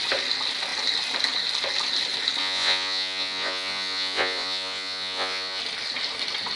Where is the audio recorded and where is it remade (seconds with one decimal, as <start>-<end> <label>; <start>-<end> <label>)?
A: 0.0-2.4 recorded; 2.4-5.6 remade; 5.6-6.6 recorded